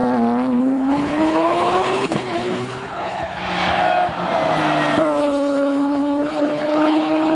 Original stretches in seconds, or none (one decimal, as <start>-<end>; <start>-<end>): 0.0-0.6; 3.4-5.2